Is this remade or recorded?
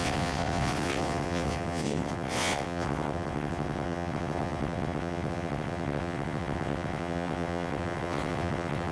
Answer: remade